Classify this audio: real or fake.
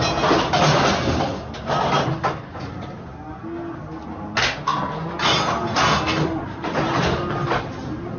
real